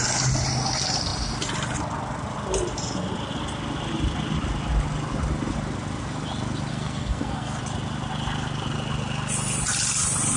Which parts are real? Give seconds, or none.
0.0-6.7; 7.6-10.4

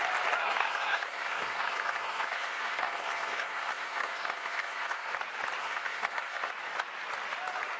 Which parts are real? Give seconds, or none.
0.0-0.4; 5.1-5.6; 6.5-7.8

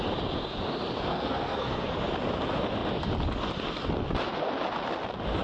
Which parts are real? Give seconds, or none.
0.0-1.1; 1.9-5.4

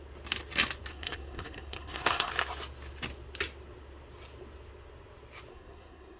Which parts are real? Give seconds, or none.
0.0-0.9; 2.3-5.5

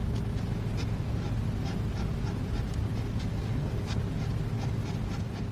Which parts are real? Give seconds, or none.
0.0-3.3; 4.0-5.5

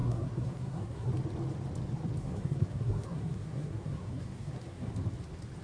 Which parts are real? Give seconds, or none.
1.1-2.2; 4.9-5.6

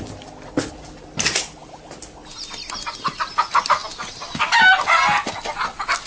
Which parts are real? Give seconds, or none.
0.0-6.1

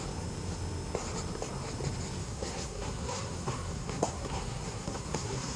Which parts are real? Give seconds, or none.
0.0-2.2